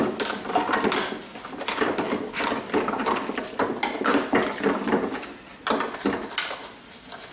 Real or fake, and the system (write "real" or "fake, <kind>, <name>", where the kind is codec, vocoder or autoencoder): real